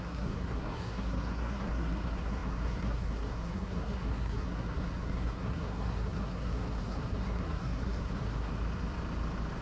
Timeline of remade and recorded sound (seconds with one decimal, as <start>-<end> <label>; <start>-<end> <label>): 0.0-8.5 remade; 8.5-9.6 recorded